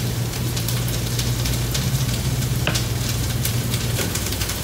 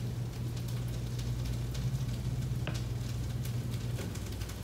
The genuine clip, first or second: second